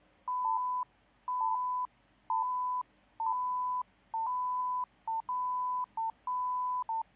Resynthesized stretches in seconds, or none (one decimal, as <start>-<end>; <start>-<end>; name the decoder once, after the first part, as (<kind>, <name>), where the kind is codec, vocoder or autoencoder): none